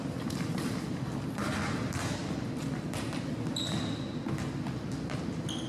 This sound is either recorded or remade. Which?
recorded